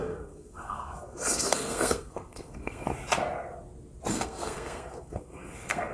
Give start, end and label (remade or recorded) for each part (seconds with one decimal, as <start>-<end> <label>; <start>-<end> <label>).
0.0-2.9 remade; 2.9-4.1 recorded; 4.1-5.9 remade